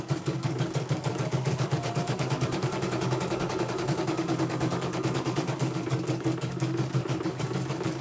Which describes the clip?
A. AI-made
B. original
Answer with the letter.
A